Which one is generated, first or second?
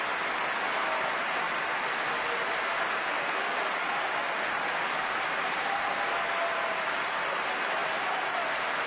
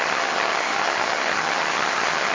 second